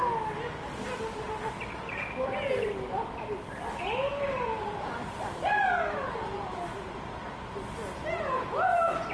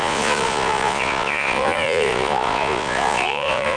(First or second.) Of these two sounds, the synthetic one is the second